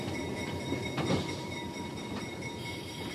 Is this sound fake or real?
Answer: fake